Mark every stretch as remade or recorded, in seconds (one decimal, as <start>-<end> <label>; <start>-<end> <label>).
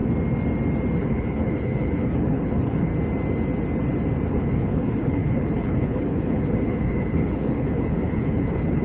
0.0-1.0 recorded; 1.0-2.9 remade; 2.9-4.3 recorded; 4.3-8.8 remade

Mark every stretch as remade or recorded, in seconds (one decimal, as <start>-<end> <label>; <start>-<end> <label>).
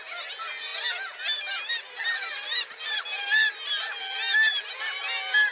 0.0-5.5 recorded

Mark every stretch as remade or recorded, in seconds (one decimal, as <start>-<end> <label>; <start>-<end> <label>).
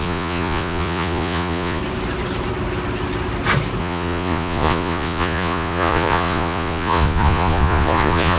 0.0-1.8 remade; 1.8-3.8 recorded; 3.8-8.4 remade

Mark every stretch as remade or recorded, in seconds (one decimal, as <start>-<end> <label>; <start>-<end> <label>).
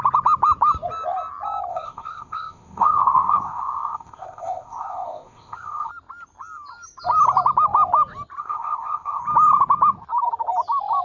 0.0-1.7 recorded; 1.7-5.9 remade; 5.9-8.4 recorded; 8.4-9.2 remade; 9.2-11.0 recorded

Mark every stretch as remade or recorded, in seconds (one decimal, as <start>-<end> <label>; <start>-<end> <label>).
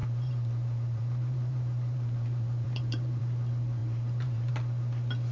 0.0-3.2 remade; 3.2-3.8 recorded; 3.8-4.5 remade; 4.5-5.3 recorded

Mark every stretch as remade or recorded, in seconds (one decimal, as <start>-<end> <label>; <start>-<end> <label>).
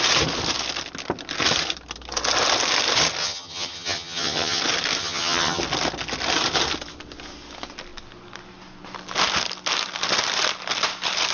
0.0-3.2 recorded; 3.2-4.6 remade; 4.6-5.0 recorded; 5.0-5.6 remade; 5.6-11.3 recorded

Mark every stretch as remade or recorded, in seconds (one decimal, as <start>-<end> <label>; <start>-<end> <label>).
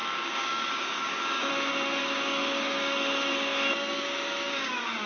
0.0-1.5 remade; 1.5-2.0 recorded; 2.0-5.1 remade